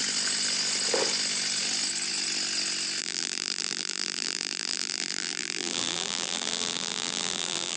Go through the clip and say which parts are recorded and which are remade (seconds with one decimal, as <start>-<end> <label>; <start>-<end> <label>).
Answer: 0.0-3.0 recorded; 3.0-7.8 remade